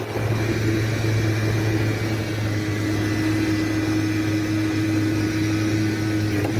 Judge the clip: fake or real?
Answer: real